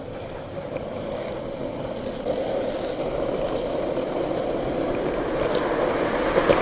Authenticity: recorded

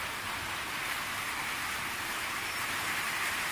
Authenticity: remade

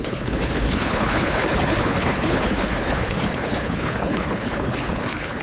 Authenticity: remade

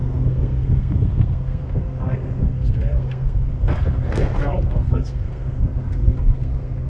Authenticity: remade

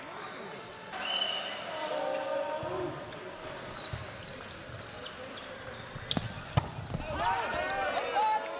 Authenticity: recorded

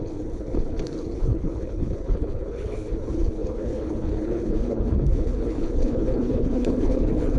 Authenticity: remade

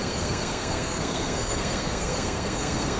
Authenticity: remade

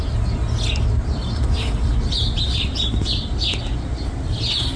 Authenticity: recorded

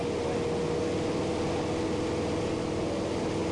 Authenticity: recorded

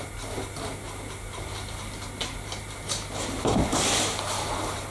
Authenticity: recorded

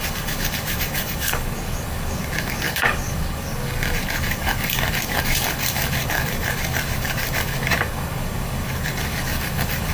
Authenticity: remade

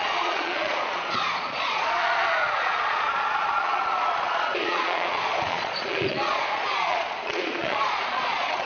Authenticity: remade